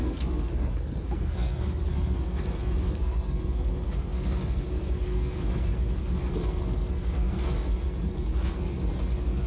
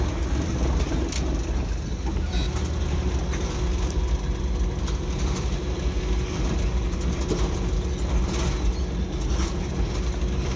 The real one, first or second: second